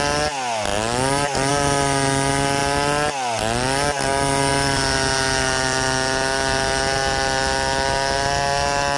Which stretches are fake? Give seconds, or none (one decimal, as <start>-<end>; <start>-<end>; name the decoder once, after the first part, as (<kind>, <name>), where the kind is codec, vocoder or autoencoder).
none